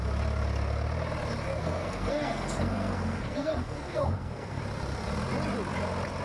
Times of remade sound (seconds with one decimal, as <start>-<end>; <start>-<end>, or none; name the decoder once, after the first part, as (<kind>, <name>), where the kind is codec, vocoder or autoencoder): 1.6-4.6 (codec, SNAC)